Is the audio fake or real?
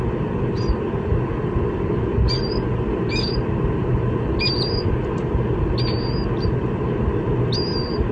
real